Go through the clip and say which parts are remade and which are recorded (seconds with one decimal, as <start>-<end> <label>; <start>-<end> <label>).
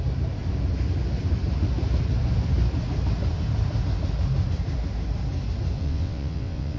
0.0-5.8 recorded; 5.8-6.8 remade